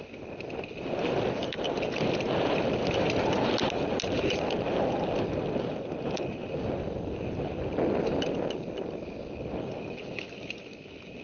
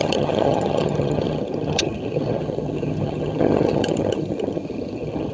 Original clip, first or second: first